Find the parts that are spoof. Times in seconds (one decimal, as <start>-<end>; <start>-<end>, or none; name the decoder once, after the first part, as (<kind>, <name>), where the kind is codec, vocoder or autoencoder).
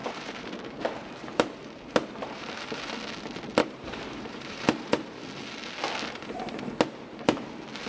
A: 0.0-2.6 (vocoder, BigVGAN v2); 3.6-5.2